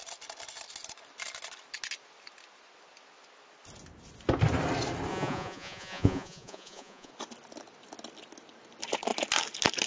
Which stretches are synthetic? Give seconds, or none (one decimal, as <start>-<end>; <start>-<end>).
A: 5.1-7.1